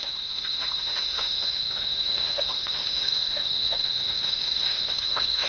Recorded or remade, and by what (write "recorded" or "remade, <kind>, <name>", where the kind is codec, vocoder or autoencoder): remade, autoencoder, DAC-VAE